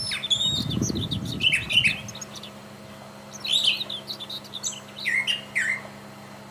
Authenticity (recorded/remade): recorded